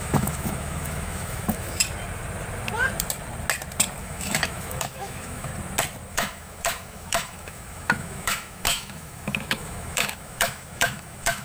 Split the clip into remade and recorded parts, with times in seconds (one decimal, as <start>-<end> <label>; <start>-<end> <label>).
0.0-1.8 remade; 1.8-4.0 recorded; 4.0-5.5 remade; 5.5-6.1 recorded; 6.1-11.4 remade